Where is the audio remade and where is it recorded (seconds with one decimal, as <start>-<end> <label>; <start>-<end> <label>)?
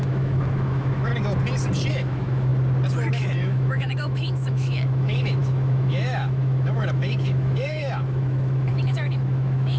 0.0-1.1 remade; 1.1-1.9 recorded; 1.9-2.5 remade; 2.5-3.1 recorded; 3.1-9.8 remade